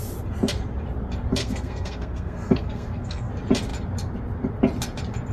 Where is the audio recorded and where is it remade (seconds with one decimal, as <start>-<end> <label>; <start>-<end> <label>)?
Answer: 0.0-1.4 recorded; 1.4-3.3 remade; 3.3-5.3 recorded